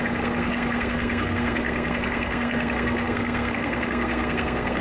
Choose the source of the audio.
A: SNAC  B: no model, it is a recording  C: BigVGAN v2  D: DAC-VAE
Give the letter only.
A